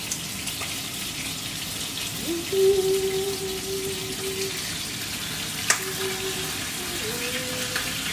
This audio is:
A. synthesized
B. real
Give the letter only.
B